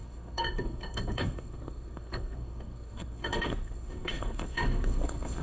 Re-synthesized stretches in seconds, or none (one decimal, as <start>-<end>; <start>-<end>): 0.0-5.4